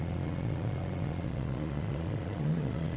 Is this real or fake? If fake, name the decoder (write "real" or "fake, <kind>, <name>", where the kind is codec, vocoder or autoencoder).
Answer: fake, vocoder, Vocos